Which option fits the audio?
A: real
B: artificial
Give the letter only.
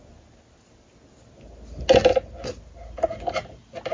A